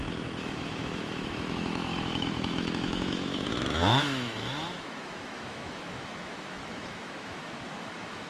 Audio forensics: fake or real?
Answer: fake